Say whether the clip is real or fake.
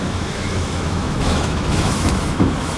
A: fake